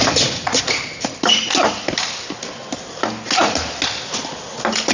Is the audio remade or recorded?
recorded